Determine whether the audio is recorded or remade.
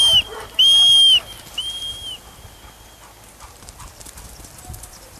recorded